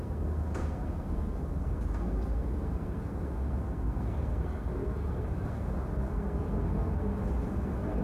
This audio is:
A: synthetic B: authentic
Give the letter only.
A